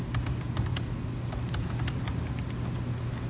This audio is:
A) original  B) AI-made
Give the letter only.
A